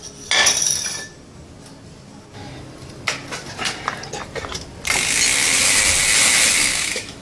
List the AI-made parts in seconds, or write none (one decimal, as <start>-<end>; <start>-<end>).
6.7-7.2

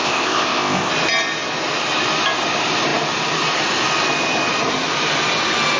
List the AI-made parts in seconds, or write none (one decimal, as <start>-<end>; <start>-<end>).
0.0-0.9

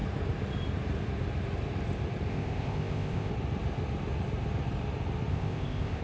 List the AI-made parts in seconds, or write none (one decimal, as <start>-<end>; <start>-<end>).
2.3-3.3; 5.3-6.0

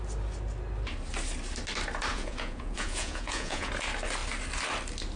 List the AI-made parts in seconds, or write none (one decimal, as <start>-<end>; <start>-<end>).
2.1-3.7